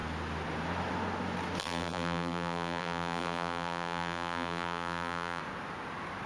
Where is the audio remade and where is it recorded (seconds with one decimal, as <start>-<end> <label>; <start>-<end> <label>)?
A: 0.0-1.6 recorded; 1.6-5.4 remade; 5.4-6.3 recorded